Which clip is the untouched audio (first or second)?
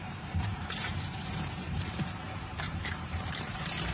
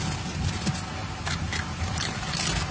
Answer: second